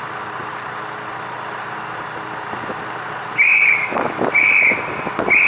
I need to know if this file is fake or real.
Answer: real